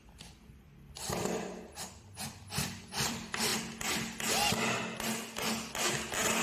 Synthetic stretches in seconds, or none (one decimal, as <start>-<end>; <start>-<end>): 0.0-3.5

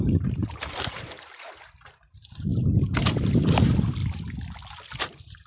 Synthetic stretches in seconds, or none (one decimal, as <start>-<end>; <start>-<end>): 0.0-2.5; 3.0-4.0; 5.0-5.5